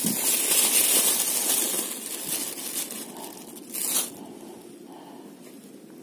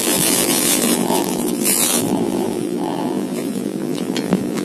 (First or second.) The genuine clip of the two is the first